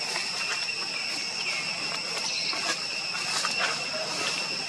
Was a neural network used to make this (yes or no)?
no